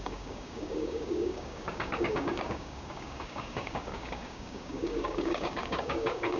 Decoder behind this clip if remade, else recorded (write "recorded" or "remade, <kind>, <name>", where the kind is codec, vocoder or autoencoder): remade, codec, DAC